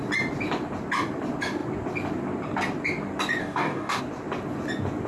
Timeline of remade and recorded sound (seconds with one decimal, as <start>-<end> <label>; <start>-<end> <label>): 0.0-3.4 recorded; 3.4-4.0 remade; 4.0-5.1 recorded